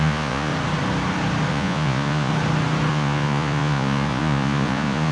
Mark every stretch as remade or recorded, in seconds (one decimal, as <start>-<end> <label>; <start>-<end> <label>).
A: 0.0-0.5 remade; 0.5-1.5 recorded; 1.5-2.3 remade; 2.3-2.9 recorded; 2.9-5.1 remade